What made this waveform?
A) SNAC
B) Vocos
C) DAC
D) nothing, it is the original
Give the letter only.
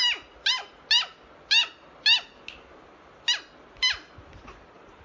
D